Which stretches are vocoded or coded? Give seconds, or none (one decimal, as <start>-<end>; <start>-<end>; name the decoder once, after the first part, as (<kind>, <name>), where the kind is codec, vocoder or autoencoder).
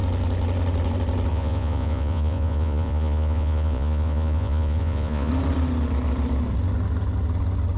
1.3-5.3 (vocoder, Vocos)